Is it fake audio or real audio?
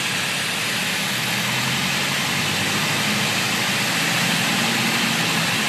real